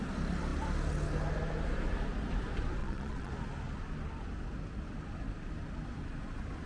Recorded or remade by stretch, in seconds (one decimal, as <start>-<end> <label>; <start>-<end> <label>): 0.0-2.8 recorded; 2.8-3.3 remade; 3.3-6.7 recorded